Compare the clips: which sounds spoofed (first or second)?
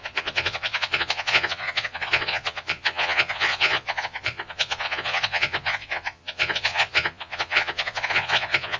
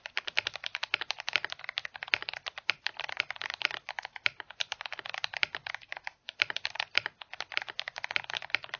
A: first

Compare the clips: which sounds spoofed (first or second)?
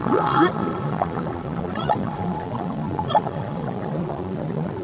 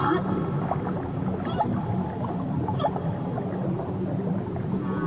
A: first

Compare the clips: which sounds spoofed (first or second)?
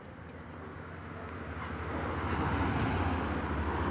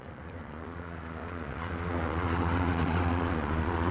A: second